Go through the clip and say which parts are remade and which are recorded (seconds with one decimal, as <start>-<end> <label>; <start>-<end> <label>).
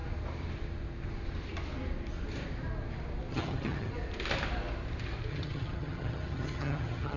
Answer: 0.0-3.3 recorded; 3.3-3.9 remade; 3.9-5.3 recorded; 5.3-7.2 remade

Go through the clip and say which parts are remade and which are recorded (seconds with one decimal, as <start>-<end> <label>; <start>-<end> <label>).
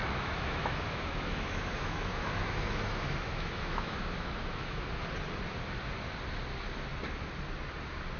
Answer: 0.0-4.9 remade; 4.9-8.2 recorded